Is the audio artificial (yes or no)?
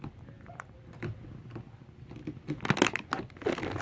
no